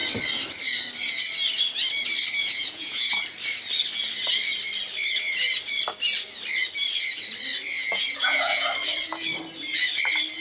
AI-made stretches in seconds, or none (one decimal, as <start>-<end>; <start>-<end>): 2.4-3.2; 7.8-8.7